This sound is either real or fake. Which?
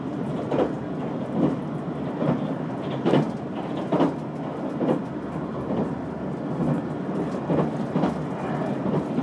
real